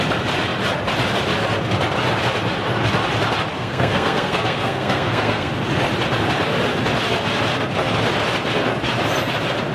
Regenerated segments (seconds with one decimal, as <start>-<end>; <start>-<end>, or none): 3.5-5.5